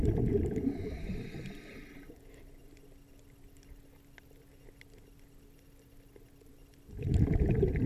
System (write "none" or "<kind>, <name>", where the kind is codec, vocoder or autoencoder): none